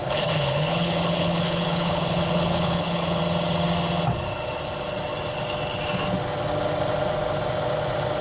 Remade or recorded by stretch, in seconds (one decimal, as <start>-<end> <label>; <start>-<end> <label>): 0.0-3.2 remade; 3.2-8.2 recorded